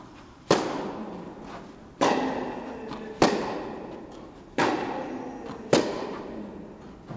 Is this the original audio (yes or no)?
yes